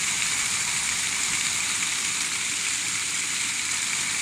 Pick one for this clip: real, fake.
fake